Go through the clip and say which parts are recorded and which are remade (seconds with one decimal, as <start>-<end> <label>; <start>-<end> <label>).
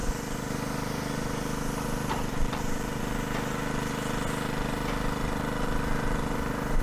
0.0-0.5 remade; 0.5-2.3 recorded; 2.3-3.0 remade; 3.0-6.8 recorded